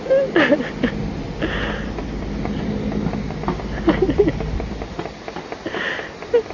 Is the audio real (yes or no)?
yes